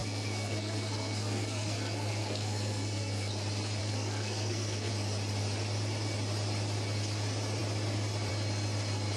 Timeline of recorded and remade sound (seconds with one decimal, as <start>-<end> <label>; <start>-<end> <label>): 0.0-3.3 remade; 3.3-3.8 recorded; 3.8-4.9 remade; 4.9-9.2 recorded